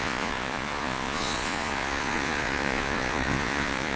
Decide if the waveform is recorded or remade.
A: remade